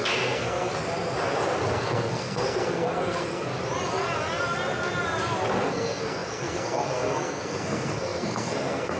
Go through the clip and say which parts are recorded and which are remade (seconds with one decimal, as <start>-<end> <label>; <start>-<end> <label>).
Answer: 0.0-0.7 remade; 0.7-1.7 recorded; 1.7-3.5 remade; 3.5-5.6 recorded; 5.6-9.0 remade

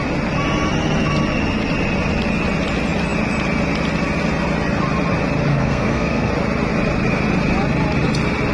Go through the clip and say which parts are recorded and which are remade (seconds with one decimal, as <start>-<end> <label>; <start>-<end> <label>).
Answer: 0.0-5.5 recorded; 5.5-6.3 remade; 6.3-8.5 recorded

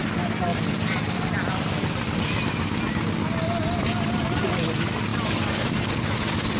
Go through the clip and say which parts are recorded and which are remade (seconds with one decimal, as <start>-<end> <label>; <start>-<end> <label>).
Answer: 0.0-6.6 recorded

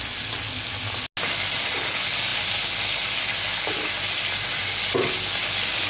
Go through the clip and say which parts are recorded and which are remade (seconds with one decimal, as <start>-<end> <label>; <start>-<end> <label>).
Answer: 0.0-5.9 recorded

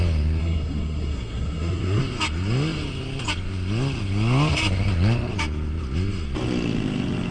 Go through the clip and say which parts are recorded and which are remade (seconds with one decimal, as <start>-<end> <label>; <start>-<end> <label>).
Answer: 0.0-0.4 recorded; 0.4-2.0 remade; 2.0-7.3 recorded

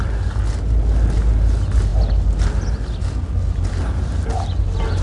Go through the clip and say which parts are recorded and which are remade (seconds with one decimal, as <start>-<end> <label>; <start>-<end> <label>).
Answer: 0.0-5.0 recorded

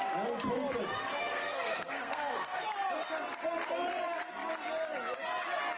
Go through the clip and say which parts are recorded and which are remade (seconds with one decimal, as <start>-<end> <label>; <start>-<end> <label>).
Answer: 0.0-1.2 recorded; 1.2-2.6 remade; 2.6-5.8 recorded